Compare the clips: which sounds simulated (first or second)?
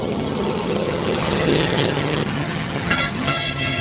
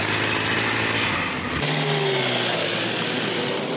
first